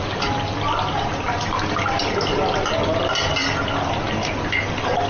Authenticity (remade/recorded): recorded